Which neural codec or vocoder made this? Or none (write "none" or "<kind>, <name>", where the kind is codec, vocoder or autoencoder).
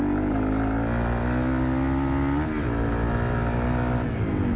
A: none